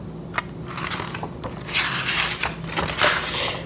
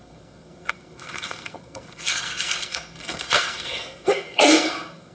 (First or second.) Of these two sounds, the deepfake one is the second